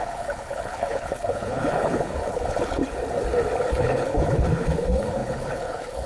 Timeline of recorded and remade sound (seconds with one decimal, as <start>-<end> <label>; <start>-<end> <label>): 0.0-2.8 remade; 2.8-3.7 recorded; 3.7-6.1 remade